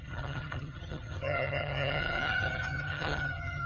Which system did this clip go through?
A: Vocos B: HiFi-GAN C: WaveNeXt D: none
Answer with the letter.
B